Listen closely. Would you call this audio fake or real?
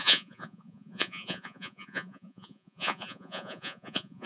fake